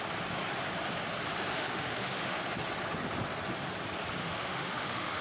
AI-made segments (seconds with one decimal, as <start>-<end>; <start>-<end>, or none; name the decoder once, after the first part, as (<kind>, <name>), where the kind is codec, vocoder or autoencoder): 1.5-2.4 (autoencoder, DAC-VAE); 4.2-5.2